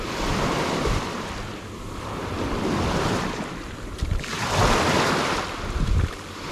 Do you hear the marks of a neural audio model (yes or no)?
yes